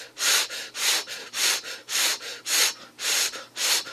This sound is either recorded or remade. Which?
recorded